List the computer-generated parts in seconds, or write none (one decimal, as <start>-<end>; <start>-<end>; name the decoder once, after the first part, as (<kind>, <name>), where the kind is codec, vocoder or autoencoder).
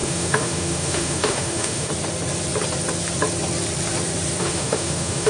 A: 0.0-1.9 (autoencoder, DAC-VAE); 4.4-5.3